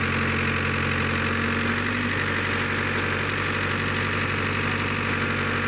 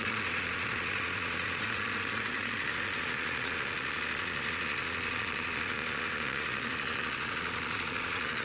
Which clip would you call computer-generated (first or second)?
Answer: second